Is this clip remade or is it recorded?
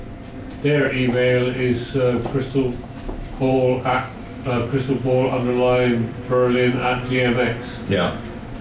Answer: recorded